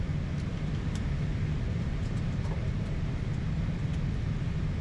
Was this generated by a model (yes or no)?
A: no